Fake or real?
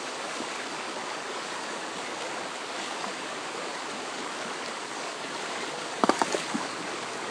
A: fake